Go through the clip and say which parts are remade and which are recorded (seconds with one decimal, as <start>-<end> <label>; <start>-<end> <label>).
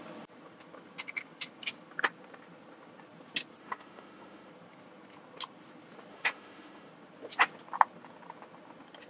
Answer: 0.0-3.6 recorded; 3.6-4.5 remade; 4.5-6.1 recorded; 6.1-6.9 remade; 6.9-9.1 recorded